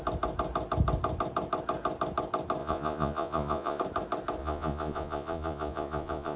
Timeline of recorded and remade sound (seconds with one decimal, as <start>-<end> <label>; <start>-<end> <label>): 0.0-2.6 recorded; 2.6-3.8 remade; 3.8-4.4 recorded; 4.4-6.4 remade